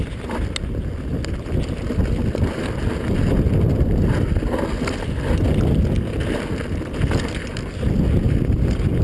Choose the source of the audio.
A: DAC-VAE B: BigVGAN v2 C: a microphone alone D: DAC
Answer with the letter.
C